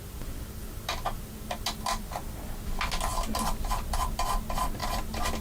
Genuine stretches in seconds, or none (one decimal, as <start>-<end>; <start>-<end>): 0.0-5.4